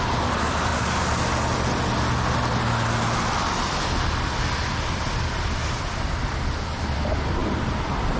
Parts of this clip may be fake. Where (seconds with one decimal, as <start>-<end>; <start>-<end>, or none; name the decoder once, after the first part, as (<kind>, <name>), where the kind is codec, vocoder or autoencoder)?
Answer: 0.0-0.7 (vocoder, BigVGAN v2); 4.9-8.2

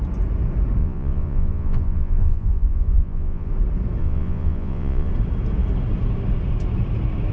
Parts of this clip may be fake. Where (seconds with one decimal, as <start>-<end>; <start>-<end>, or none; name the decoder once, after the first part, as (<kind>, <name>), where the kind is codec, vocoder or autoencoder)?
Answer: 0.8-3.5 (vocoder, Vocos); 4.0-5.1

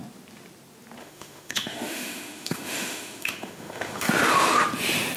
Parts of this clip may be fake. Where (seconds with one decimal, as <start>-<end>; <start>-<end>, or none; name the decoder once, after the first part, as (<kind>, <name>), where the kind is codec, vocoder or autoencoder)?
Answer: 1.0-4.1 (autoencoder, DAC-VAE)

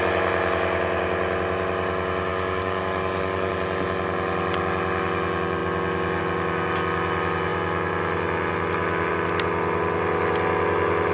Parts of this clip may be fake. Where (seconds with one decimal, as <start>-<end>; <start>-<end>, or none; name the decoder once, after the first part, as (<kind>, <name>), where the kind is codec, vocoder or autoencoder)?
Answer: 2.3-3.5 (codec, DAC)

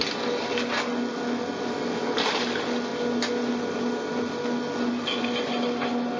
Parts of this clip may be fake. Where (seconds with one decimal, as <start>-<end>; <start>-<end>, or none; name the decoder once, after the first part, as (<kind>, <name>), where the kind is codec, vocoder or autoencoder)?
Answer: none